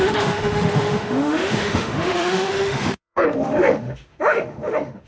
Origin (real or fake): fake